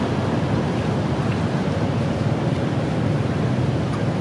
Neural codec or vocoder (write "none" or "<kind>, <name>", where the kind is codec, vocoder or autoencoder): none